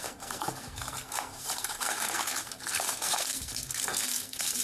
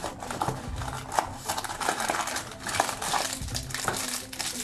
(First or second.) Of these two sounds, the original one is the second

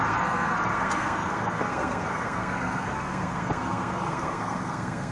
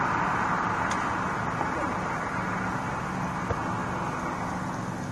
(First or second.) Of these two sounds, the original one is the second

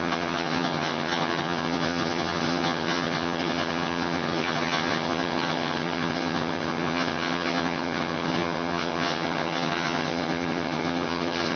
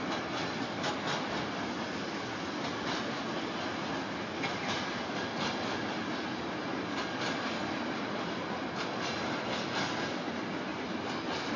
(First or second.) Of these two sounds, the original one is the second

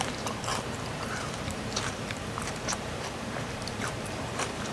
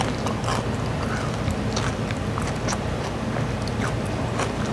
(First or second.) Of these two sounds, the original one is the second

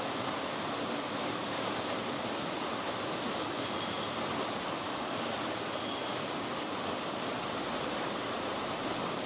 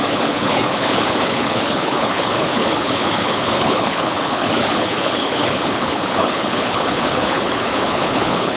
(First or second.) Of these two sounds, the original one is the first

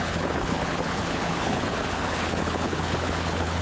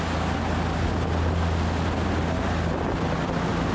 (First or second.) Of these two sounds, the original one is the second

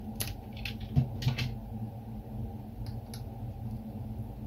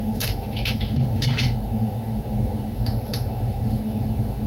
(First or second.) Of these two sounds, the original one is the first